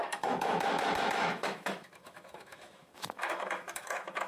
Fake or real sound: fake